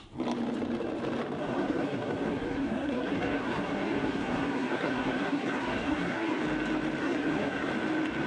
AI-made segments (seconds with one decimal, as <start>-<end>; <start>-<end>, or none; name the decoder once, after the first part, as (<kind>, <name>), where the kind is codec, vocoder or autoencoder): 1.4-6.4 (codec, SNAC); 7.0-7.7

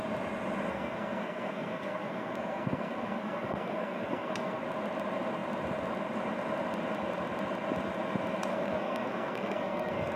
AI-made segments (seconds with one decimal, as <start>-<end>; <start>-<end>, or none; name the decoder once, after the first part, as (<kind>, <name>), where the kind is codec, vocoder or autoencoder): 0.7-4.6 (codec, SNAC); 8.5-10.2